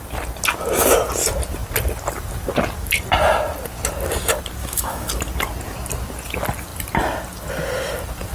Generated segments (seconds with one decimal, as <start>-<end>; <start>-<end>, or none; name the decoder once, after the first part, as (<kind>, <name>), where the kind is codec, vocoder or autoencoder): 4.6-5.1 (autoencoder, DAC-VAE)